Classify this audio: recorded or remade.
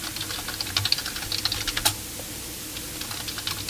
recorded